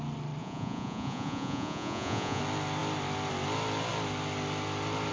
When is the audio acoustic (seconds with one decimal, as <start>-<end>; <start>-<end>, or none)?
0.0-0.4; 2.4-5.1